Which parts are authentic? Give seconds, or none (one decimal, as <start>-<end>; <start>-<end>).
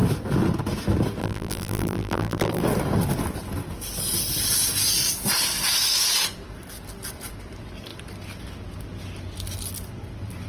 0.0-1.2; 2.6-10.5